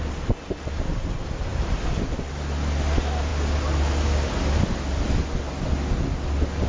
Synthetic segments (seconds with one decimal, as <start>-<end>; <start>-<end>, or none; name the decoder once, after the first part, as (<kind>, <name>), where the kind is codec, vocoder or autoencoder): none